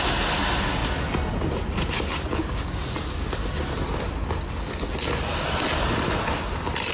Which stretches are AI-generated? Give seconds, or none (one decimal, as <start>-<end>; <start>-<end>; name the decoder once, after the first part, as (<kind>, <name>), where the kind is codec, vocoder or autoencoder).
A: none